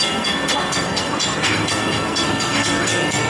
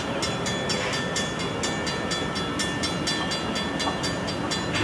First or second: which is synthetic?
first